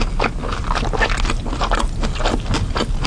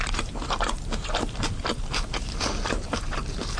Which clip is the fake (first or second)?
second